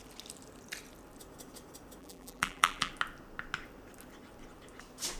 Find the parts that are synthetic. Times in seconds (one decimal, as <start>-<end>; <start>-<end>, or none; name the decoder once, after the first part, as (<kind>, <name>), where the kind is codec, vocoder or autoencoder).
2.0-2.9 (vocoder, BigVGAN v2)